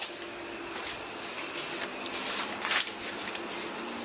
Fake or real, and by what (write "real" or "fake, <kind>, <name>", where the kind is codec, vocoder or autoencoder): real